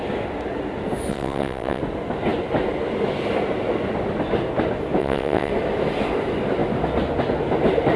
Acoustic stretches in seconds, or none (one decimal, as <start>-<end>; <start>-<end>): 0.0-1.1; 1.8-5.0; 5.5-8.0